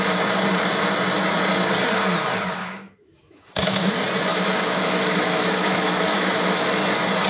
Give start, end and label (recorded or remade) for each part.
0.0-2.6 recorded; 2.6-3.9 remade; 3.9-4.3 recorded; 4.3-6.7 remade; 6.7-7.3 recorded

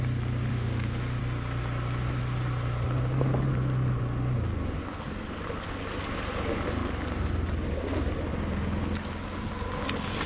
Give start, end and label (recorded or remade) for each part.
0.0-0.5 recorded; 0.5-1.2 remade; 1.2-10.3 recorded

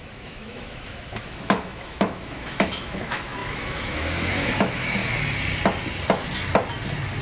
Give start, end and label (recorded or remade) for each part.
0.0-5.0 remade; 5.0-7.2 recorded

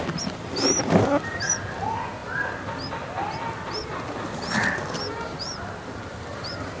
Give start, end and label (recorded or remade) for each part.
0.0-6.8 recorded